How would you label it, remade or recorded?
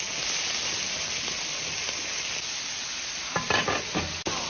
recorded